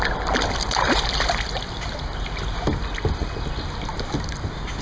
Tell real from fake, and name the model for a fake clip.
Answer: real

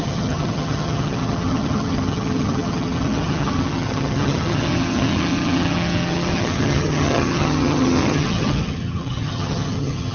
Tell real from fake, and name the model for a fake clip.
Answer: fake, vocoder, HiFi-GAN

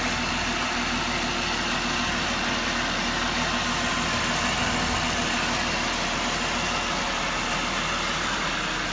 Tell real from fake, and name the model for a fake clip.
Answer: real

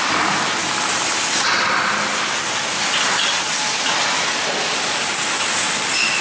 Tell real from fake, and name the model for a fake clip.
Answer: real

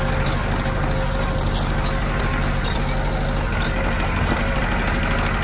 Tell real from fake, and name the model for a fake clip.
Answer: real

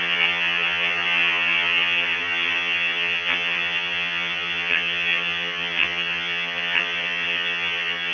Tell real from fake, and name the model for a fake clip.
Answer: fake, vocoder, HiFi-GAN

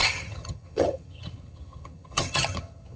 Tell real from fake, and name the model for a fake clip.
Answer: fake, vocoder, HiFi-GAN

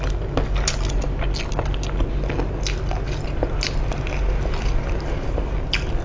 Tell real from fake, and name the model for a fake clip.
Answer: real